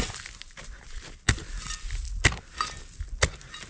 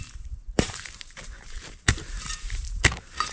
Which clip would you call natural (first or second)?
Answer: first